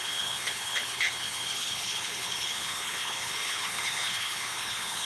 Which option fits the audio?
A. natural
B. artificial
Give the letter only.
B